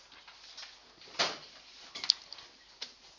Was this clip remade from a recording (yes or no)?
no